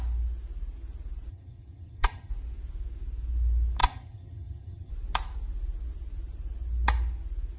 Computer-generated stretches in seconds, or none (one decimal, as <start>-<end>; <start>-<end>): 1.3-2.3; 3.8-4.9

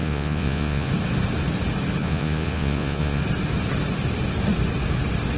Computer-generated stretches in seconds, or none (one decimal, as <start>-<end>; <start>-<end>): 0.0-0.9; 2.0-3.2

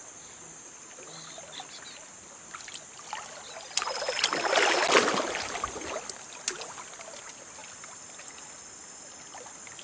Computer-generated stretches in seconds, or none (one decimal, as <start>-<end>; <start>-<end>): none

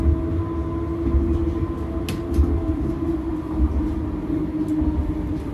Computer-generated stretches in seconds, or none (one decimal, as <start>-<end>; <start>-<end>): none

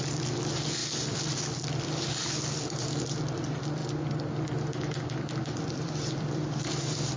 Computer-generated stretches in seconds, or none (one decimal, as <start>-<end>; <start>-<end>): 0.0-3.8; 5.0-7.2

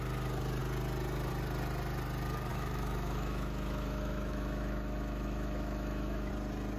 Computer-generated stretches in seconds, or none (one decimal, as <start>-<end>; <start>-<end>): 2.5-6.3

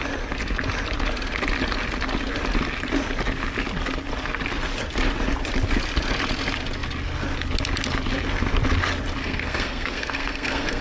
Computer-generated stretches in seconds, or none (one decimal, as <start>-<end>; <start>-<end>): 9.2-10.8